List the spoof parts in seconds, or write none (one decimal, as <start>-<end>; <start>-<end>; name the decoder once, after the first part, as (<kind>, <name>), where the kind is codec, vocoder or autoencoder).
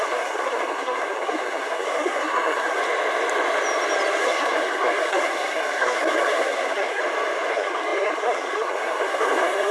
0.0-2.8 (codec, SNAC); 4.2-7.0; 7.5-9.7